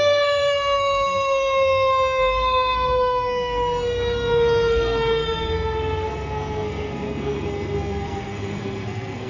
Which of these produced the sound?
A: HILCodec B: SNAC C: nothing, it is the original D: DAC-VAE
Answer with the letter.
B